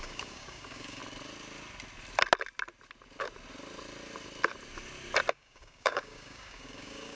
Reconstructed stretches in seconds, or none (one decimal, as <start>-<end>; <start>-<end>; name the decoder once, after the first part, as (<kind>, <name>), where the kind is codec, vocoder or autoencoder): 0.0-1.0 (codec, DAC); 5.3-7.2

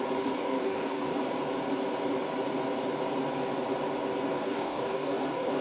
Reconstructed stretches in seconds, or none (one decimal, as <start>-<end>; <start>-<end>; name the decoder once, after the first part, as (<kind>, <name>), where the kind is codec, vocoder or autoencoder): 0.4-1.2 (codec, DAC); 4.3-5.6

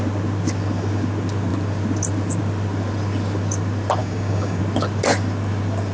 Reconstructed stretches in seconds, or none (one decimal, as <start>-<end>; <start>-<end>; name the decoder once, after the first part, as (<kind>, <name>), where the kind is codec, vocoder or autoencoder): 4.0-4.6 (codec, DAC)